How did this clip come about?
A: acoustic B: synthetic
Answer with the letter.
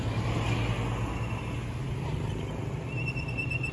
A